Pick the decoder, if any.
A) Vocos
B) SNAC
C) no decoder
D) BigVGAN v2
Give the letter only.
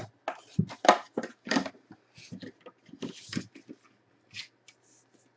C